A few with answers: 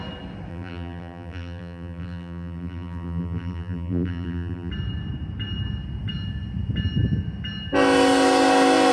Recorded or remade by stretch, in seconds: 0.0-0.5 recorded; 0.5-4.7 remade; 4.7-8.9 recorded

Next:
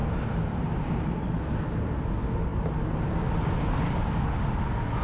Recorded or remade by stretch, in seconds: 0.0-5.0 recorded

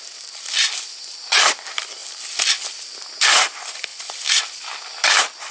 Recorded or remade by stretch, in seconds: 0.0-3.9 recorded; 3.9-5.5 remade